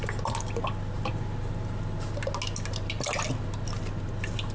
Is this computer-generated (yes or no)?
no